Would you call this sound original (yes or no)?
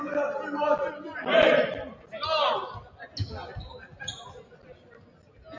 yes